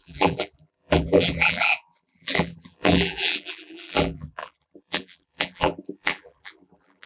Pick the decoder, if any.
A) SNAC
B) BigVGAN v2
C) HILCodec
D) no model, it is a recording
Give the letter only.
B